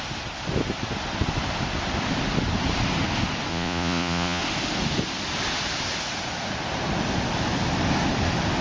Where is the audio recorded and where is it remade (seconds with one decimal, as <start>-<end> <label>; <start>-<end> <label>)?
0.0-3.5 recorded; 3.5-4.4 remade; 4.4-8.6 recorded